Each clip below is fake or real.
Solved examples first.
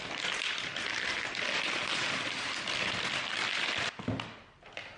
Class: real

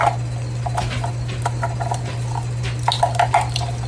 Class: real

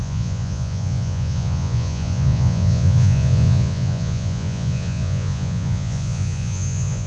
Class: fake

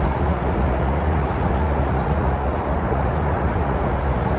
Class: fake